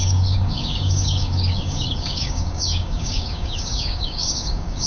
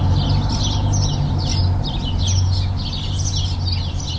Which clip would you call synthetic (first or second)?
first